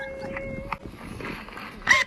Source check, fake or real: real